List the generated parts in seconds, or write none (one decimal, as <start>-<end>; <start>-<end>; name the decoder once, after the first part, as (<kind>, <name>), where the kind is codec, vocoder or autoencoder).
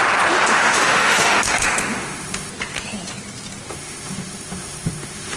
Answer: 0.5-2.5 (autoencoder, DAC-VAE); 3.7-5.4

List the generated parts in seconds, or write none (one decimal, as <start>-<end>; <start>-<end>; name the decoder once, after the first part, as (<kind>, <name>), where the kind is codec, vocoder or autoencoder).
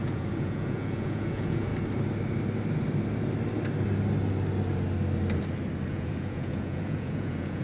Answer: 0.0-1.7 (vocoder, Vocos); 5.9-7.6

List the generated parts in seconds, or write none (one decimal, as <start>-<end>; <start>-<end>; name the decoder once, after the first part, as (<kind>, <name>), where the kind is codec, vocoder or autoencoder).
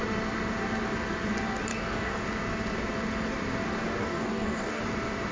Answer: 1.7-2.2 (codec, DAC); 4.0-4.8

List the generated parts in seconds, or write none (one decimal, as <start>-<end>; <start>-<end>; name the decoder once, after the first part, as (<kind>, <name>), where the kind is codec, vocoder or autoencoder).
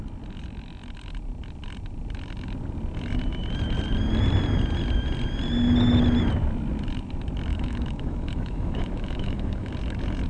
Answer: 7.5-9.7 (autoencoder, DAC-VAE)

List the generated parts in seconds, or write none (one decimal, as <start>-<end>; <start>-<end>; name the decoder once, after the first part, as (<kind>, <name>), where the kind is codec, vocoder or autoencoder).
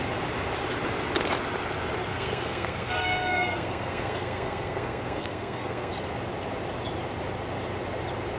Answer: 2.1-5.9 (codec, SNAC)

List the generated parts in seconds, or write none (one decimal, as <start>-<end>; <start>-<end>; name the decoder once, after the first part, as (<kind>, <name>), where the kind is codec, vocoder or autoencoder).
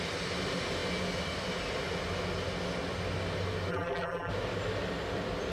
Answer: 3.7-4.3 (vocoder, BigVGAN v2)